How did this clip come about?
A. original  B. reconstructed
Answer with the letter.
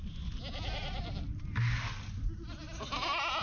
A